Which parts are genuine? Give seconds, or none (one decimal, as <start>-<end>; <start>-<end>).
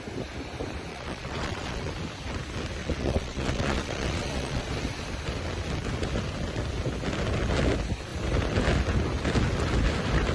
0.0-0.9; 1.9-2.8; 4.6-10.3